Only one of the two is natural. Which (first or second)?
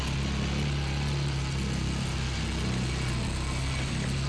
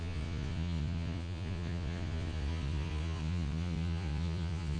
first